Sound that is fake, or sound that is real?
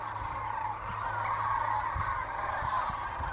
fake